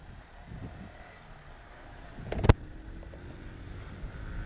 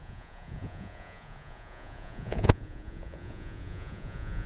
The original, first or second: first